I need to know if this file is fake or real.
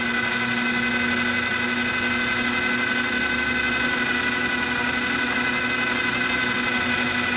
real